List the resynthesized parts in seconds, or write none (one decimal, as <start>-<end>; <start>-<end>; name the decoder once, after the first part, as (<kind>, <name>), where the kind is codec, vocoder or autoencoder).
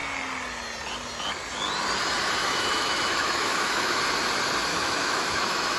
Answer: 2.4-4.0 (autoencoder, DAC-VAE); 4.7-5.8